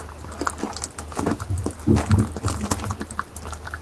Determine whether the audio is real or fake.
real